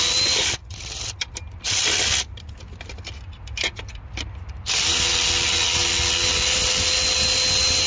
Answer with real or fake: real